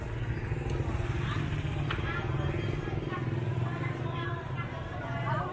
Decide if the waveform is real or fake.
real